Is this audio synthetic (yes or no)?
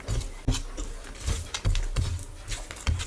no